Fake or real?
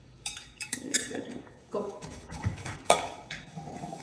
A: fake